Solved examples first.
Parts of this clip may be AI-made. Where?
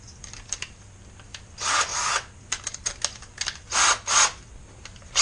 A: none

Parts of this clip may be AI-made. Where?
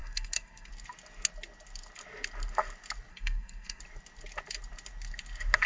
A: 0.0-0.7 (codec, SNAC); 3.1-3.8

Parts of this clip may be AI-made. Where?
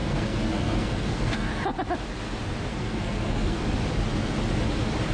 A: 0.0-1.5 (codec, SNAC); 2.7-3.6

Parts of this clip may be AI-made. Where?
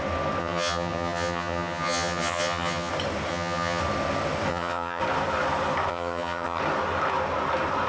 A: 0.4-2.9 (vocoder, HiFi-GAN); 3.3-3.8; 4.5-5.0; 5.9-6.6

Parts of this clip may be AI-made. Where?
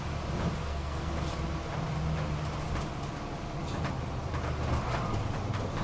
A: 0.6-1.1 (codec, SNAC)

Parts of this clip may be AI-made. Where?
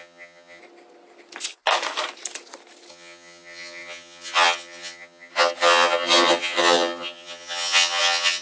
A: 0.0-0.6 (vocoder, HiFi-GAN); 2.9-8.4